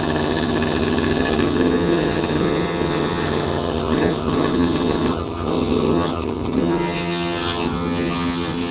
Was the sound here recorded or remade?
remade